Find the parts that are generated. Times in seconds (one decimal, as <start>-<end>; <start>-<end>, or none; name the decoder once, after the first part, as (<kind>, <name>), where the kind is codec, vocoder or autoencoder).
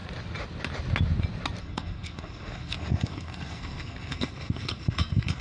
1.6-5.4 (codec, SNAC)